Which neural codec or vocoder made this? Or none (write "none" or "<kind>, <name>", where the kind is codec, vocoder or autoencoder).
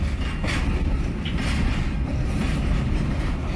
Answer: none